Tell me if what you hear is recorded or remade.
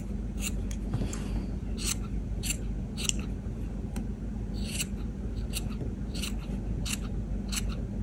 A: recorded